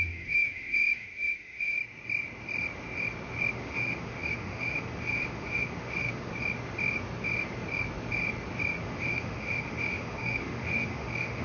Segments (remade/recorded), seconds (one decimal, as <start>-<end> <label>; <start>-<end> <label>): 0.0-1.8 remade; 1.8-3.5 recorded; 3.5-6.3 remade; 6.3-8.8 recorded; 8.8-11.4 remade